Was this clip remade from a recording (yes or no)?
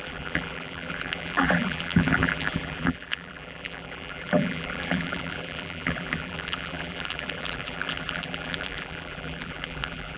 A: yes